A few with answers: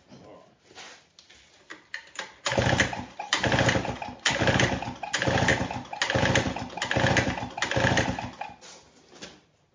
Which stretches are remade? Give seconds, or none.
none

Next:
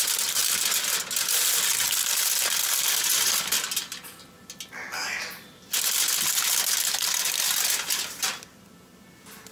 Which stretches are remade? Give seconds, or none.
none

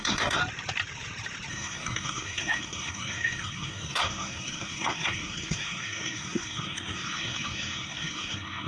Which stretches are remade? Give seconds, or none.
0.0-0.4 (codec, SNAC); 1.5-8.7

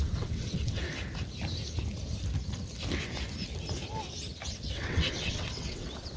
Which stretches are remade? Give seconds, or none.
0.0-0.8 (vocoder, WaveNeXt); 4.5-6.2

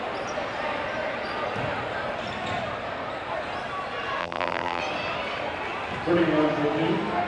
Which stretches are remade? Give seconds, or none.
4.2-4.8 (vocoder, BigVGAN v2)

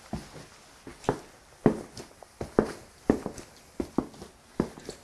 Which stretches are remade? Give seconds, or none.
none